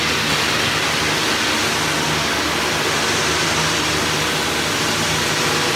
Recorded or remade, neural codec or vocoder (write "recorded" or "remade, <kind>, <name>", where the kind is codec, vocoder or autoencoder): recorded